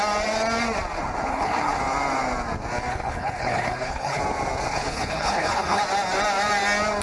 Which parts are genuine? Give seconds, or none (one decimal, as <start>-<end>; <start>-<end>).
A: 0.0-1.3; 1.8-2.9; 4.2-4.7; 5.8-7.0